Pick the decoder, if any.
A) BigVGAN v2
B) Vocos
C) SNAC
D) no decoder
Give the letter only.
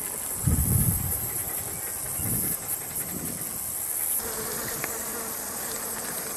A